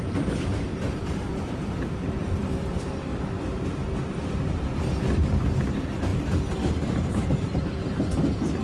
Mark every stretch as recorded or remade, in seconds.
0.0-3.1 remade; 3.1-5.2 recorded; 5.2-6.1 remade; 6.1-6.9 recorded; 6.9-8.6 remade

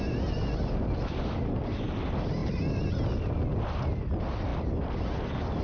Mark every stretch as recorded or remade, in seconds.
0.0-5.6 recorded

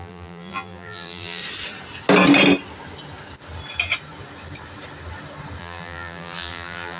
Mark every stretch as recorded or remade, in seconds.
0.0-1.4 remade; 1.4-5.6 recorded; 5.6-7.0 remade

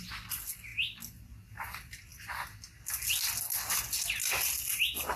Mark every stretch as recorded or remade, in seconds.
0.0-5.2 recorded

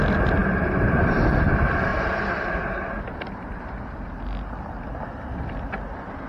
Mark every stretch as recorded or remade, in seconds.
0.0-0.4 recorded; 0.4-1.0 remade; 1.0-1.9 recorded; 1.9-5.7 remade; 5.7-6.3 recorded

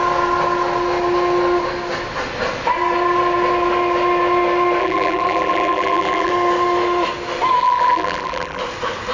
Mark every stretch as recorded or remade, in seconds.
0.0-4.8 recorded; 4.8-6.3 remade; 6.3-7.6 recorded; 7.6-8.6 remade; 8.6-9.1 recorded

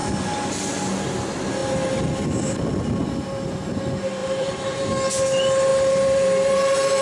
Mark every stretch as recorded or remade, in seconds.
0.0-4.2 recorded; 4.2-4.9 remade; 4.9-5.7 recorded; 5.7-6.5 remade; 6.5-7.0 recorded

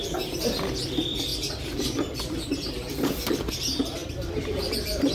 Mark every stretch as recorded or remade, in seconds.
0.0-1.3 recorded; 1.3-3.5 remade; 3.5-4.0 recorded; 4.0-5.1 remade